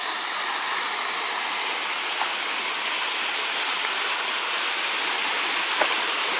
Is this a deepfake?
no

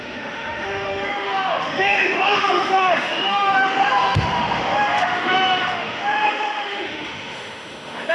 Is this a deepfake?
yes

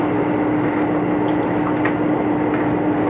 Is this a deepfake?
no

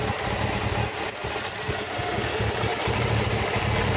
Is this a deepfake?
no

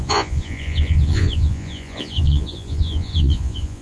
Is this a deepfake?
yes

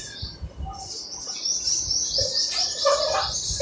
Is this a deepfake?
no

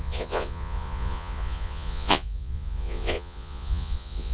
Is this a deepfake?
yes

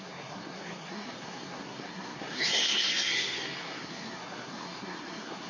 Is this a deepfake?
yes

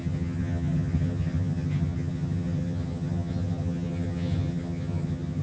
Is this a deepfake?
yes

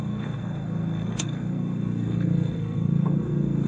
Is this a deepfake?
yes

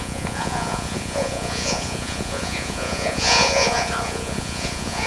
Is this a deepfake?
yes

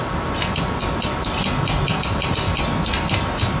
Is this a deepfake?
no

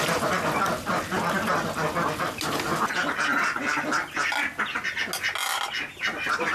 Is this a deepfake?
no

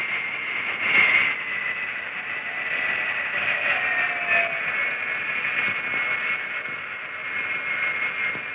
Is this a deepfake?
no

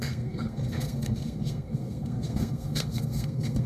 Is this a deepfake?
yes